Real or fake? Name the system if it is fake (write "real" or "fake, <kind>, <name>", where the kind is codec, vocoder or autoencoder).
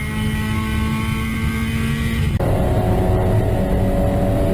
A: real